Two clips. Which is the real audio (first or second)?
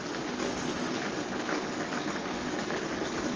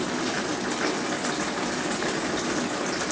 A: second